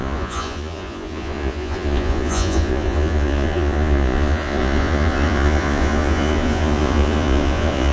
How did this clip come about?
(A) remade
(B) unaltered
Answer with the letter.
A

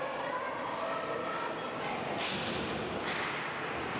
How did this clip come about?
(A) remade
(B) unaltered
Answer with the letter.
B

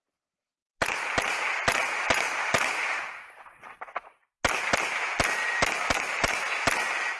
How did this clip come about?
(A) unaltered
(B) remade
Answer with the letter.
A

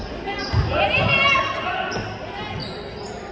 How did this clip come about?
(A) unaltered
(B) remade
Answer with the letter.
A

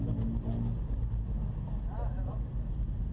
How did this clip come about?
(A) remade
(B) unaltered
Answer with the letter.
B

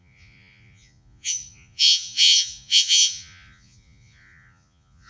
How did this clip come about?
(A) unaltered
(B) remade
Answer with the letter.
B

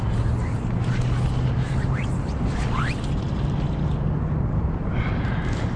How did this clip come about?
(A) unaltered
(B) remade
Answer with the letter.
A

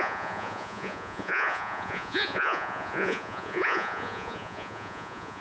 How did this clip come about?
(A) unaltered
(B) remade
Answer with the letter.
B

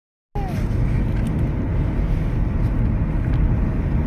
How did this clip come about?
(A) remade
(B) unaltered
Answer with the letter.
B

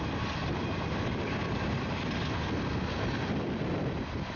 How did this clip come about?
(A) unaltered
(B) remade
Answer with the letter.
A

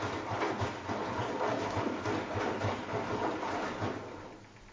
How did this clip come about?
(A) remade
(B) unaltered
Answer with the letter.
B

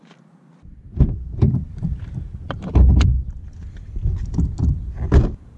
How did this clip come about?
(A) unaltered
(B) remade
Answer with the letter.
A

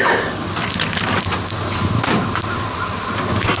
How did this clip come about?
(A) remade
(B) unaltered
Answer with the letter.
B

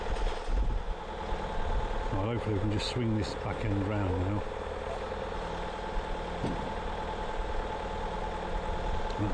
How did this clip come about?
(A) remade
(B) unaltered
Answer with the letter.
B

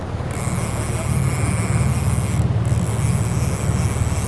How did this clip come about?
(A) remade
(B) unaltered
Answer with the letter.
B